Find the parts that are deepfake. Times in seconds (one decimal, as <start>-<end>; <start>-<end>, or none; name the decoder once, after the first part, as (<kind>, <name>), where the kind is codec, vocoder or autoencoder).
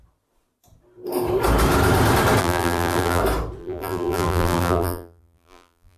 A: 2.4-3.2 (vocoder, BigVGAN v2); 3.6-6.0